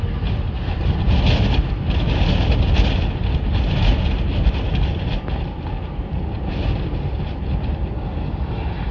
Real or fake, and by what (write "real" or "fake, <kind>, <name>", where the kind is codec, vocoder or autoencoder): real